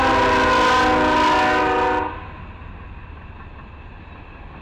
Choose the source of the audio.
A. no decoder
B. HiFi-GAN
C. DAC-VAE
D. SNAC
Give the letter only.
A